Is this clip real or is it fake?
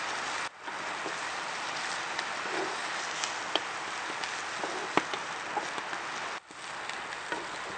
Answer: real